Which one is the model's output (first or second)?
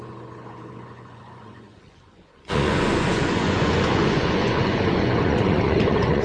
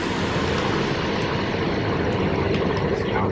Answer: first